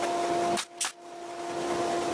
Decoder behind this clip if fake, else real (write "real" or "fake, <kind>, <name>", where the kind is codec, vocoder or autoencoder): real